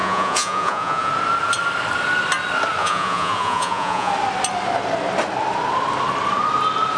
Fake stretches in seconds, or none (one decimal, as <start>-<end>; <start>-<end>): 0.0-1.1; 2.8-4.1